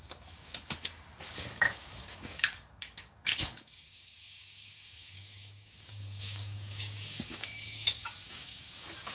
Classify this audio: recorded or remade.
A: remade